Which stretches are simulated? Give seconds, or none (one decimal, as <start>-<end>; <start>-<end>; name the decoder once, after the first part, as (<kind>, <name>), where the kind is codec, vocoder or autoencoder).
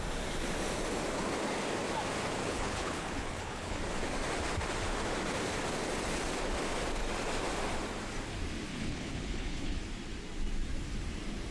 2.4-3.8 (codec, HILCodec); 8.7-9.8